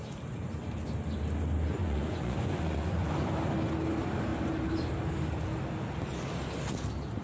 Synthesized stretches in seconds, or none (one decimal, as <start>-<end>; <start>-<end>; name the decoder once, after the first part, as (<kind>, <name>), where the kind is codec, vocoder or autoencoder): 1.8-3.1 (vocoder, Vocos)